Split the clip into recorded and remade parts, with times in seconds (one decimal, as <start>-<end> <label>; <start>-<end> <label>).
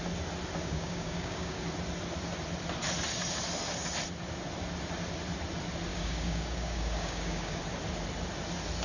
0.0-0.6 recorded; 0.6-1.6 remade; 1.6-5.9 recorded; 5.9-7.6 remade; 7.6-8.8 recorded